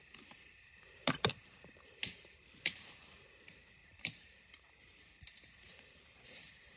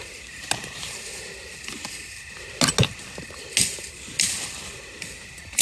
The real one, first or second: second